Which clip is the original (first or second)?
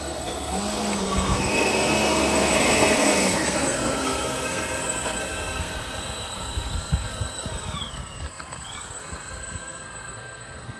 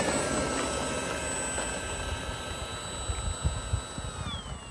second